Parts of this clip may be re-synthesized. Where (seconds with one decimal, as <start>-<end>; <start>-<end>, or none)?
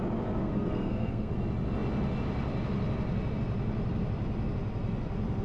0.4-1.3